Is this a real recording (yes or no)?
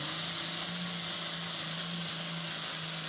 yes